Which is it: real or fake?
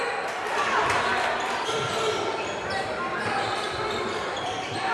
fake